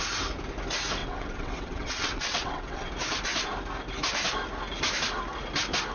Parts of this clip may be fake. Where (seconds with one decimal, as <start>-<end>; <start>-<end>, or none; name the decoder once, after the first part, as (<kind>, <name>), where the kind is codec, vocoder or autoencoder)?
1.0-2.9 (vocoder, WaveNeXt)